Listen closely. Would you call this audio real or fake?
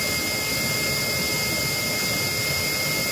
real